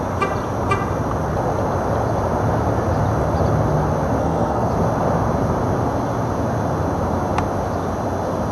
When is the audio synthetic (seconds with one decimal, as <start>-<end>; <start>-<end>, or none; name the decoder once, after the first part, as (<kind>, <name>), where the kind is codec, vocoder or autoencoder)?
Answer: 4.2-4.7 (codec, SNAC)